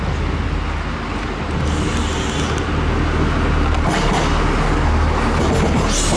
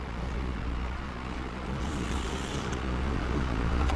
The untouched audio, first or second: first